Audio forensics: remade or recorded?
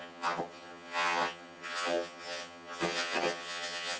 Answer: remade